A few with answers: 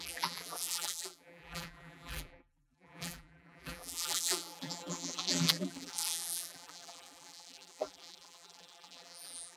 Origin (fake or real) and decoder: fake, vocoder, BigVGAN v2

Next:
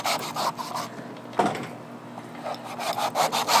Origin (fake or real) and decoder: real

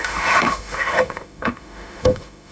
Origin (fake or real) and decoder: fake, autoencoder, DAC-VAE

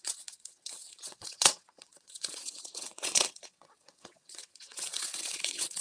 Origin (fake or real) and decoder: fake, vocoder, WaveNeXt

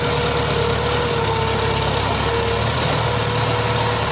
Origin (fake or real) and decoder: real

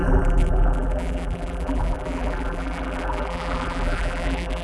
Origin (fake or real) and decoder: fake, vocoder, BigVGAN v2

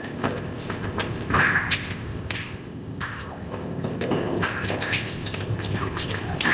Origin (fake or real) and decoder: fake, codec, ZipCodec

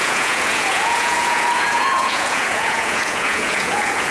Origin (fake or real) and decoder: fake, vocoder, Vocos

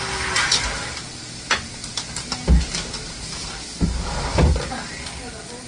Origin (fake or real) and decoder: real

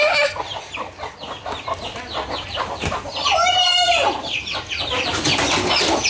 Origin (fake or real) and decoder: real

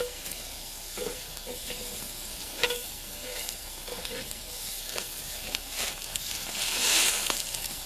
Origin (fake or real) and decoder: fake, codec, SNAC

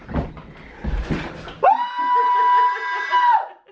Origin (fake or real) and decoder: real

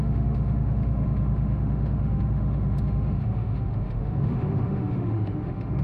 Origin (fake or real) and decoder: fake, autoencoder, DAC-VAE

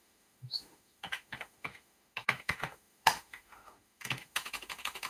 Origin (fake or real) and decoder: fake, autoencoder, DAC-VAE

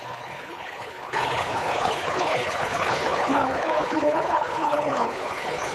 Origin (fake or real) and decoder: fake, codec, HILCodec